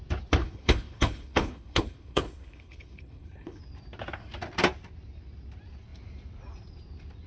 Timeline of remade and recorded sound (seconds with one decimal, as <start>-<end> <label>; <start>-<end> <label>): 0.0-0.4 recorded; 0.4-3.6 remade; 3.6-7.3 recorded